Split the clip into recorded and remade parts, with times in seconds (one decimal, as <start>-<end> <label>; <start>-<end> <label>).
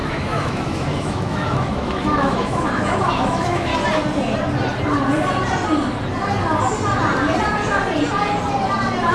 0.0-3.7 remade; 3.7-9.1 recorded